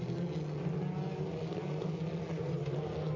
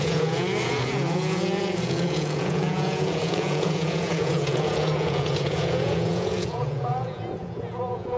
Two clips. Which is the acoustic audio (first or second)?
first